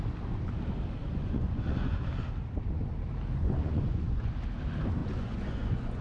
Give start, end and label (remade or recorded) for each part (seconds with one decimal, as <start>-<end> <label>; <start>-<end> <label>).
0.0-1.0 recorded; 1.0-2.0 remade; 2.0-3.4 recorded; 3.4-4.3 remade; 4.3-5.0 recorded; 5.0-6.0 remade